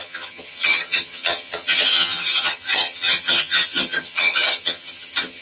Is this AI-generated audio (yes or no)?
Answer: yes